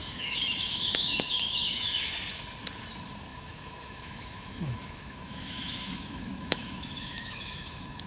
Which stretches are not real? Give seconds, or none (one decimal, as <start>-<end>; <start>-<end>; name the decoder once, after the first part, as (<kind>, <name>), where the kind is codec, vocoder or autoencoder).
0.0-2.1 (autoencoder, DAC-VAE); 3.3-8.1